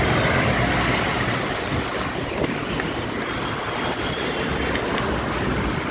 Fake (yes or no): no